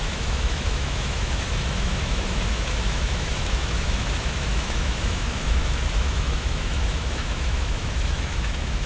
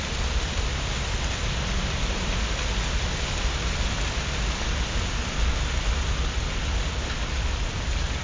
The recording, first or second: second